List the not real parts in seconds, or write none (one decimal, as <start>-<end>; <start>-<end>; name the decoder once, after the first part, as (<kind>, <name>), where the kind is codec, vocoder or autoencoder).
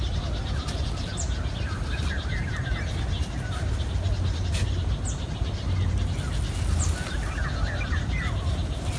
none